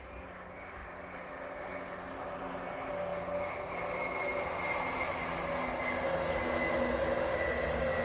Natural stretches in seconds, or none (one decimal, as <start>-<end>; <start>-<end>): 0.0-8.0